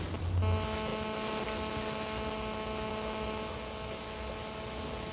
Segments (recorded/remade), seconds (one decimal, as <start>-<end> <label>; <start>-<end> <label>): 0.0-5.1 recorded